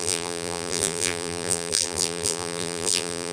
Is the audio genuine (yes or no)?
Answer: no